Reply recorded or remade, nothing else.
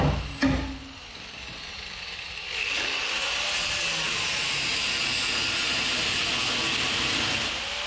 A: recorded